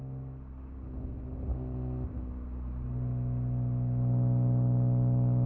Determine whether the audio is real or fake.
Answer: real